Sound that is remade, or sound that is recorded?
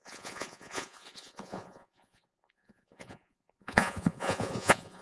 remade